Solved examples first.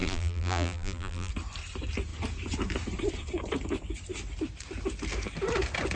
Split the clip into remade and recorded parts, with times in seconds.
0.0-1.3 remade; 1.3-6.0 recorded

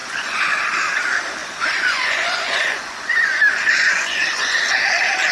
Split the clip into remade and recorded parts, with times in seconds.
0.0-0.6 remade; 0.6-1.4 recorded; 1.4-4.6 remade; 4.6-5.3 recorded

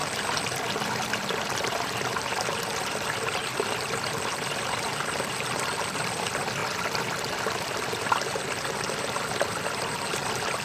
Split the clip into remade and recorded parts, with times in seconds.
0.0-1.4 recorded; 1.4-10.6 remade

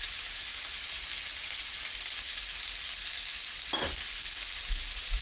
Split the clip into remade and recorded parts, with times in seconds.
0.0-5.2 recorded

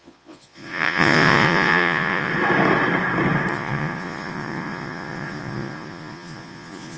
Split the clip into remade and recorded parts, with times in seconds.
0.0-2.3 remade; 2.3-3.5 recorded; 3.5-7.0 remade

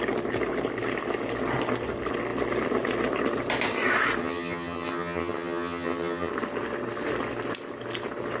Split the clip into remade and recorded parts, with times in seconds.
0.0-4.2 recorded; 4.2-6.3 remade; 6.3-8.4 recorded

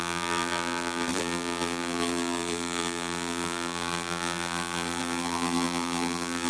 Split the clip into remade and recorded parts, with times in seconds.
0.0-6.5 remade

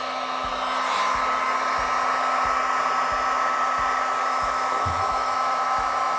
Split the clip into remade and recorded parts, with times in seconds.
0.0-0.5 remade; 0.5-4.2 recorded; 4.2-6.2 remade